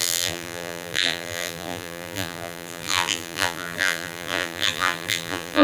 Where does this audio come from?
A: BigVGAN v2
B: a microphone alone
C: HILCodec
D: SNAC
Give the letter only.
A